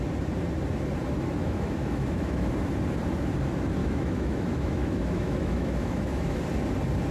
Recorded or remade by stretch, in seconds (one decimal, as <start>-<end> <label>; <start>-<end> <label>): 0.0-1.4 recorded; 1.4-2.5 remade; 2.5-3.8 recorded; 3.8-6.4 remade; 6.4-7.1 recorded